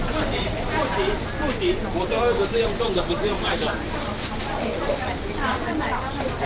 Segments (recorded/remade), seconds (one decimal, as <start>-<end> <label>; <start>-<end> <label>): 0.0-6.5 recorded